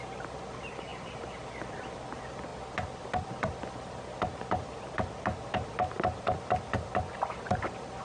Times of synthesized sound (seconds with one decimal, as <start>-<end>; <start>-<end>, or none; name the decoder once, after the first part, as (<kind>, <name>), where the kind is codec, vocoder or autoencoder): none